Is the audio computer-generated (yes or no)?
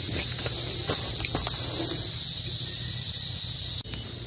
no